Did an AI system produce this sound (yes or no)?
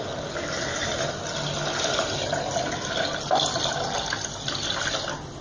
no